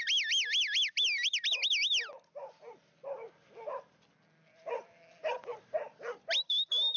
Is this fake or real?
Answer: real